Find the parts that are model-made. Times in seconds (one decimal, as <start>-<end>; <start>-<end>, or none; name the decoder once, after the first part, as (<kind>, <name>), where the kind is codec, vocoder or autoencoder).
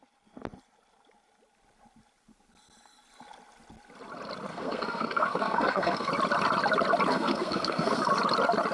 4.5-6.1 (codec, SNAC); 7.1-8.0